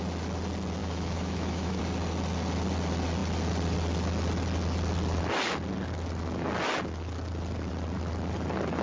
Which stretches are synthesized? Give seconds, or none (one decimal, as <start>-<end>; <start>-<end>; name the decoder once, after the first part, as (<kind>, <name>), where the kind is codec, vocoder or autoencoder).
0.8-1.8 (autoencoder, DAC-VAE)